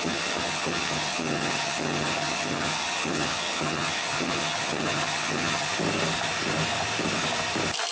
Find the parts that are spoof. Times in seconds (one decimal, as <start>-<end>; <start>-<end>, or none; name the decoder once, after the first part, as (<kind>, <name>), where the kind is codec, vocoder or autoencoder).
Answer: 0.0-5.7 (vocoder, HiFi-GAN)